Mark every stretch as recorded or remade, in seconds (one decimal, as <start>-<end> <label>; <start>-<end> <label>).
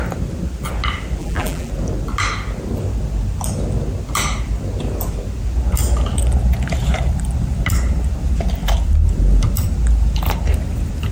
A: 0.0-1.2 recorded; 1.2-1.7 remade; 1.7-11.1 recorded